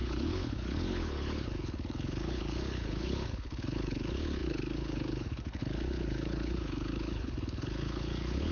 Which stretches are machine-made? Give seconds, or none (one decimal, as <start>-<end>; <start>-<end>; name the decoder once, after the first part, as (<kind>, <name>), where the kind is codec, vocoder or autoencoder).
0.0-8.5 (codec, HILCodec)